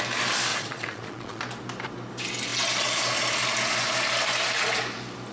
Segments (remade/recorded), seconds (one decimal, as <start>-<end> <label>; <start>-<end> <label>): 0.0-0.5 recorded; 0.5-1.4 remade; 1.4-5.3 recorded